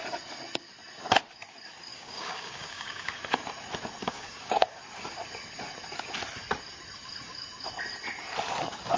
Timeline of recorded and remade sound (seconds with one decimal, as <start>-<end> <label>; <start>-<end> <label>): 0.0-1.9 recorded; 1.9-3.2 remade; 3.2-4.0 recorded; 4.0-4.8 remade; 4.8-9.0 recorded